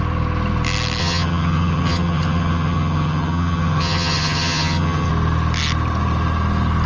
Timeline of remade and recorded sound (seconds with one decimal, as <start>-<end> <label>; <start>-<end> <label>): 0.0-1.0 recorded; 1.0-5.1 remade; 5.1-6.9 recorded